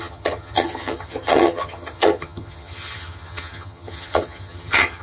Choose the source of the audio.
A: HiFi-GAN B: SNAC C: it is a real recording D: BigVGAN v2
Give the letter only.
A